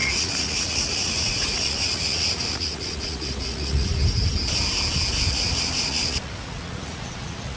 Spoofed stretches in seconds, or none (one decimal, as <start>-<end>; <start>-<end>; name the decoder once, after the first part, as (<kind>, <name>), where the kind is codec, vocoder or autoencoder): 0.0-3.9 (vocoder, Vocos); 5.3-7.6